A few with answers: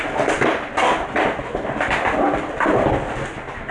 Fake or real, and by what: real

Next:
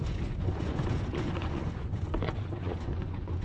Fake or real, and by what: fake, vocoder, Vocos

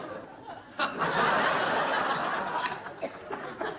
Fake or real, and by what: real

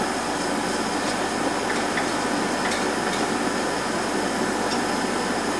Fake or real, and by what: real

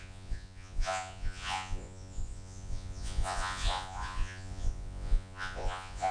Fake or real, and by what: fake, vocoder, Vocos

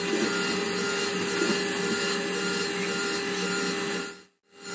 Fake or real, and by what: real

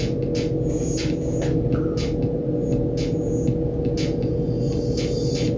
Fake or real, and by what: real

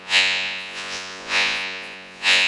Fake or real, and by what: fake, vocoder, Vocos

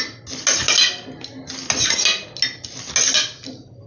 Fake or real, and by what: real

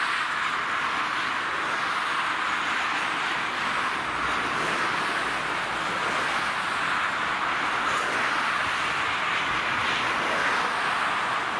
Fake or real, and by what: real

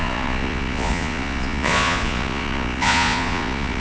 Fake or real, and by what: fake, vocoder, Vocos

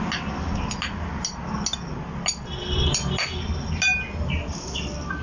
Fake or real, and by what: real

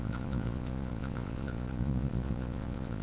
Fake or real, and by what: fake, vocoder, Vocos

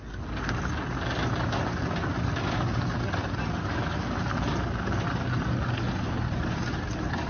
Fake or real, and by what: real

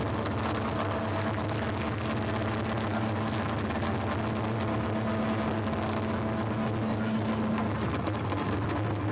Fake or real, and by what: real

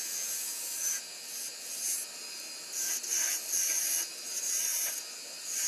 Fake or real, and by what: real